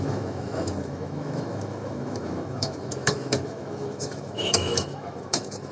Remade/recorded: remade